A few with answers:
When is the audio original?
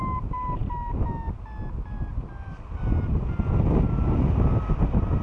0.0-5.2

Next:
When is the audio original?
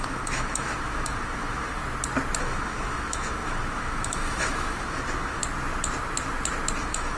1.8-2.4; 5.4-6.8